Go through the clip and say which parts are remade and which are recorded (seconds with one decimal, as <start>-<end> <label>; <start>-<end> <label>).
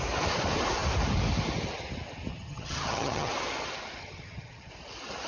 0.0-2.3 recorded; 2.3-3.3 remade; 3.3-4.0 recorded; 4.0-4.7 remade; 4.7-5.3 recorded